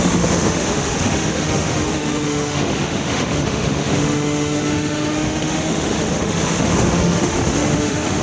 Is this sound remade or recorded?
remade